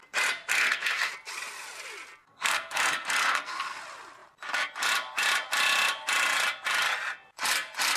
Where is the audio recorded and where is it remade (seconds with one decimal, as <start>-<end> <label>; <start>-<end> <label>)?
0.0-0.5 recorded; 0.5-1.1 remade; 1.1-2.2 recorded; 2.2-3.8 remade; 3.8-8.0 recorded